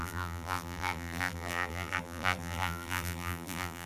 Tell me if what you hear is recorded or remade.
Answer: remade